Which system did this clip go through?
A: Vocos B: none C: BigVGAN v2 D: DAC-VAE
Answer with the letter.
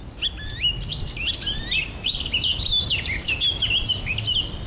B